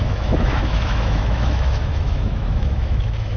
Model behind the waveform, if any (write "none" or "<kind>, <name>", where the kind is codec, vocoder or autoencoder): autoencoder, DAC-VAE